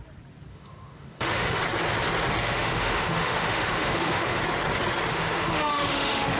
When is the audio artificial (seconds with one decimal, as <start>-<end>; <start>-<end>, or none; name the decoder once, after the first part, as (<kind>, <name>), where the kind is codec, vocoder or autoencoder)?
0.5-1.6 (autoencoder, DAC-VAE); 2.4-4.4; 5.1-6.4